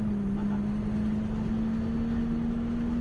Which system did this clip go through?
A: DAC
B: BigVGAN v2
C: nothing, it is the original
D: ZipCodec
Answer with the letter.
C